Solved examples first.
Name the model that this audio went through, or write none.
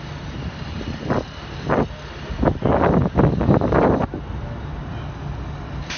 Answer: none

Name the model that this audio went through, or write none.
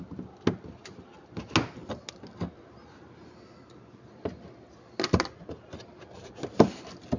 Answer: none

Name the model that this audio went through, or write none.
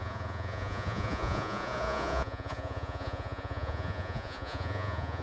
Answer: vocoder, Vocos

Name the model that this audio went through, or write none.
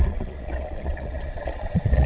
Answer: vocoder, Vocos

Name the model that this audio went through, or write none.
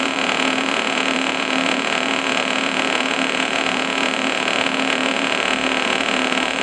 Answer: vocoder, Vocos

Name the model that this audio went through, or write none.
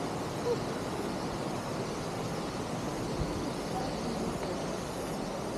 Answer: none